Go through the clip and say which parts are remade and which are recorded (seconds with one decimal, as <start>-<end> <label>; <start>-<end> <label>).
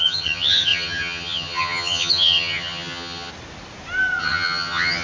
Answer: 0.0-3.3 remade; 3.3-4.2 recorded; 4.2-5.0 remade